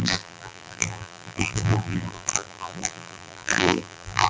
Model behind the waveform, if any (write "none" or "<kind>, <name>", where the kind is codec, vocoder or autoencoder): vocoder, BigVGAN v2